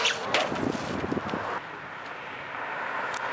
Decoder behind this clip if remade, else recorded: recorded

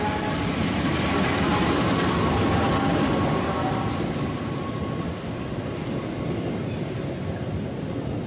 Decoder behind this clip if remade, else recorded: recorded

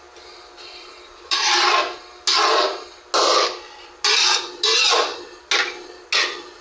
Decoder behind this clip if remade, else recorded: recorded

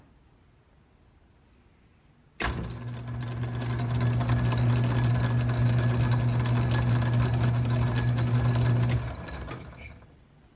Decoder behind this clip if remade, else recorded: recorded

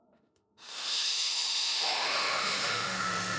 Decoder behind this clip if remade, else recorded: remade, autoencoder, DAC-VAE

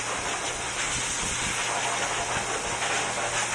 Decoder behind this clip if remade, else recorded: recorded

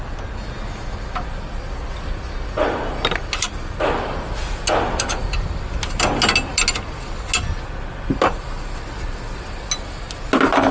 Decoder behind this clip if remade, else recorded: recorded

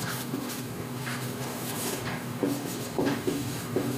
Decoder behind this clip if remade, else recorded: remade, codec, DAC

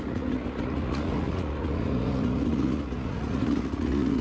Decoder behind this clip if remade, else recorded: remade, vocoder, Vocos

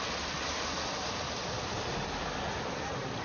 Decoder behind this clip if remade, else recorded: recorded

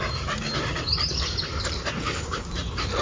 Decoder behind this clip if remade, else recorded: remade, vocoder, BigVGAN v2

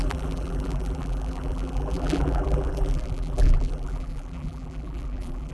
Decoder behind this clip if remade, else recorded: remade, vocoder, BigVGAN v2